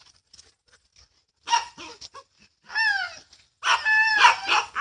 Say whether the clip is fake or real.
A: real